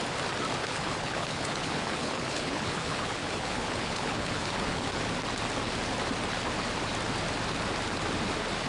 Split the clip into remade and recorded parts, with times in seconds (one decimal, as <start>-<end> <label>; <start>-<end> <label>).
0.0-0.6 recorded; 0.6-5.0 remade; 5.0-8.7 recorded